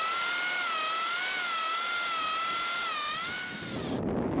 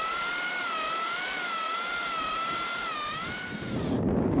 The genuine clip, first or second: first